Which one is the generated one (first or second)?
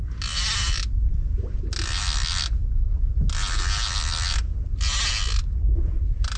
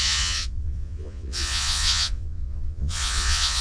second